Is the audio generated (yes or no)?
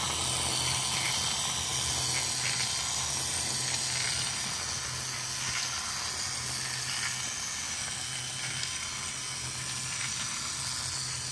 no